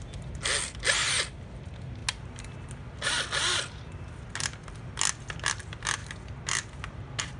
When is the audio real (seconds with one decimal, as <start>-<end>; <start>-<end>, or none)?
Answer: 0.0-7.4

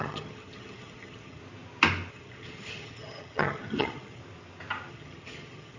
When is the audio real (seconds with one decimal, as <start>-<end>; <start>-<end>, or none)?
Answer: 1.4-2.1; 4.2-4.9